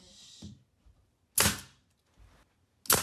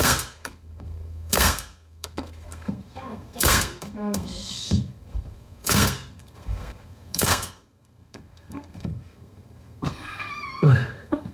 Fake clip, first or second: second